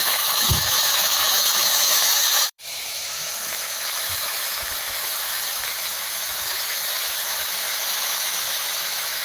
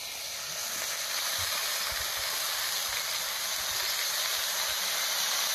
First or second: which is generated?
first